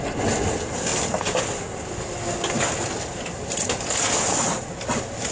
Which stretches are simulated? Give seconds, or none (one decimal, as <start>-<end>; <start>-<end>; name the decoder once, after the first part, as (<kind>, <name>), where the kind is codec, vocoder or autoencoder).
none